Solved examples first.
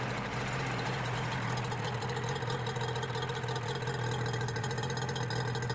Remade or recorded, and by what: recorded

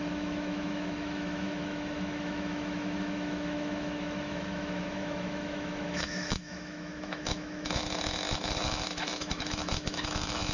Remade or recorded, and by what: remade, autoencoder, DAC-VAE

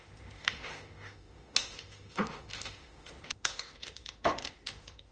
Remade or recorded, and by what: remade, autoencoder, DAC-VAE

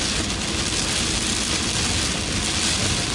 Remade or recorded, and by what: recorded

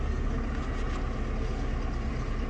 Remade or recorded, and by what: recorded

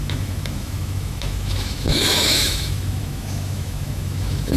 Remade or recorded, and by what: remade, autoencoder, DAC-VAE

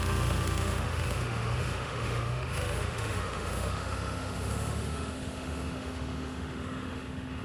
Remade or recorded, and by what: remade, autoencoder, DAC-VAE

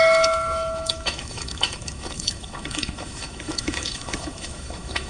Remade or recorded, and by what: remade, autoencoder, DAC-VAE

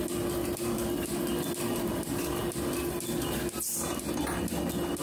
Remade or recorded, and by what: recorded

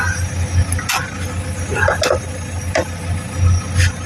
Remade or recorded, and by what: recorded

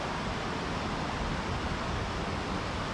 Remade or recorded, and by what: recorded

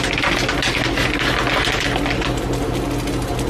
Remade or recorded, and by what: recorded